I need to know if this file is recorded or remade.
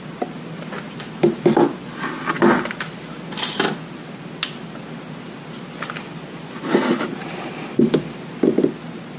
recorded